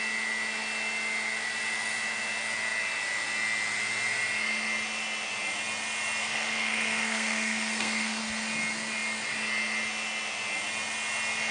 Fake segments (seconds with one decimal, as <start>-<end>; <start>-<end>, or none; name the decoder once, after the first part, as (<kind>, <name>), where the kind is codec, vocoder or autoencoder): 6.2-8.2 (codec, SNAC)